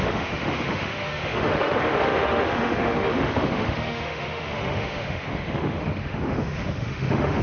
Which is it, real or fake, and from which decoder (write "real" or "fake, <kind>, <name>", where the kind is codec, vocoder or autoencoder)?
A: fake, autoencoder, DAC-VAE